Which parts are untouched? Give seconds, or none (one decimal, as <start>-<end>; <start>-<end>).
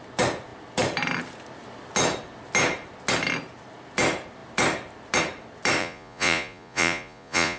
0.0-5.8